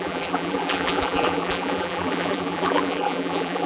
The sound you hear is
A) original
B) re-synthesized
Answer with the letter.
B